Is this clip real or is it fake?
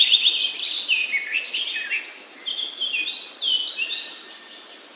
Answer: real